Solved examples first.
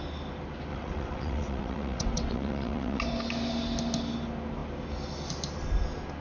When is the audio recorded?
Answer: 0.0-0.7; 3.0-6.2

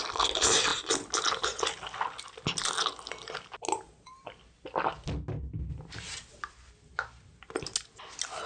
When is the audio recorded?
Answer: 0.0-8.5

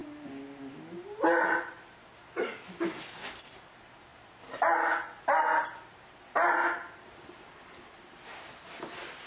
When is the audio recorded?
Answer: 0.0-9.3

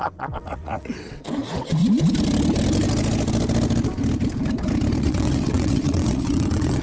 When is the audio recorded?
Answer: 1.8-5.0

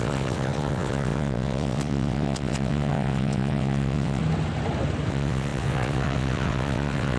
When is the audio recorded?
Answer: 4.2-5.1